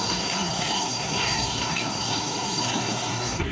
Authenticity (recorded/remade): remade